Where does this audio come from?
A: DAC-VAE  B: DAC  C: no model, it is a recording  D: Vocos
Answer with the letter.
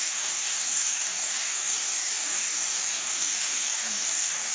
B